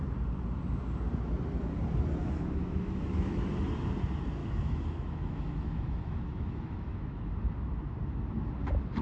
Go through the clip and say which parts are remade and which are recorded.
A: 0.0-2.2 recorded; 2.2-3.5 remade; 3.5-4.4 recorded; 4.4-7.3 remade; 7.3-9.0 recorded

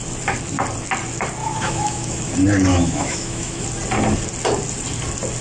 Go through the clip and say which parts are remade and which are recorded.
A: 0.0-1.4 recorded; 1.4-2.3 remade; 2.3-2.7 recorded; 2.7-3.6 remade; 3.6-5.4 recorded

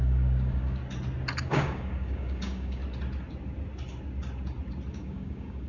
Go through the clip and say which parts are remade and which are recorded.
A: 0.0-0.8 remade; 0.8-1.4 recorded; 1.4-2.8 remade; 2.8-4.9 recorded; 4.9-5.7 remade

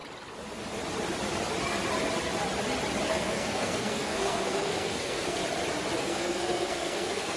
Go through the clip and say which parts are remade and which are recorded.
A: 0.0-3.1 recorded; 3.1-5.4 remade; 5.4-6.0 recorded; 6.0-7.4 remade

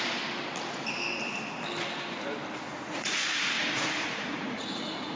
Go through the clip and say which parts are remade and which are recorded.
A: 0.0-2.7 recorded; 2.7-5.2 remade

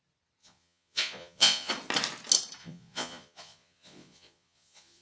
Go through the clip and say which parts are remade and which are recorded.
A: 0.0-0.4 recorded; 0.4-1.7 remade; 1.7-2.6 recorded; 2.6-5.0 remade

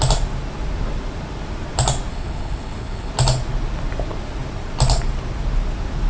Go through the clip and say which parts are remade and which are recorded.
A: 0.0-2.1 recorded; 2.1-3.1 remade; 3.1-6.1 recorded